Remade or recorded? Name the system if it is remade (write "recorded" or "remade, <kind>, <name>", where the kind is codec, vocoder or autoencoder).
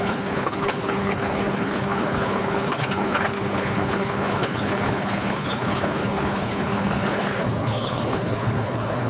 remade, codec, HILCodec